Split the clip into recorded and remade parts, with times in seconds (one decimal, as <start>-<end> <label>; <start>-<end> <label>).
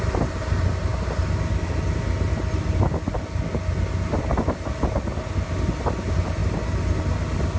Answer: 0.0-7.6 recorded